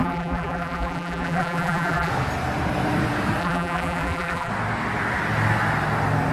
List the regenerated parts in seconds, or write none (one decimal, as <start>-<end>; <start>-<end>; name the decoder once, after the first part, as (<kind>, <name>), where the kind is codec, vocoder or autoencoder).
0.0-2.1 (vocoder, BigVGAN v2); 3.4-4.5